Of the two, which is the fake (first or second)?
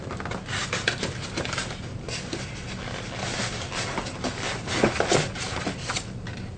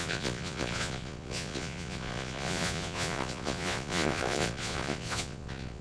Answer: second